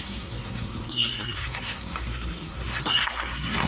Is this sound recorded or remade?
remade